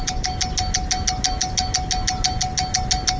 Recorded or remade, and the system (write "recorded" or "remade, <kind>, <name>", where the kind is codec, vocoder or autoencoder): recorded